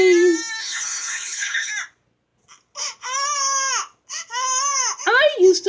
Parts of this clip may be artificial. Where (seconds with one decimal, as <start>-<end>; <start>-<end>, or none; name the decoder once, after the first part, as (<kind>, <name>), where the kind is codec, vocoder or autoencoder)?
0.6-1.7 (codec, HILCodec)